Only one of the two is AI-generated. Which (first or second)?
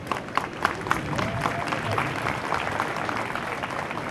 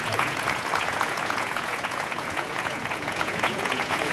second